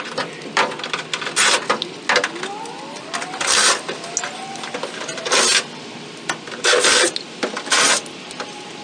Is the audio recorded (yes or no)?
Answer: yes